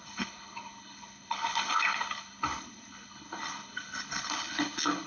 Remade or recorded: remade